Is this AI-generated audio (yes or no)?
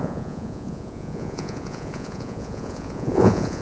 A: yes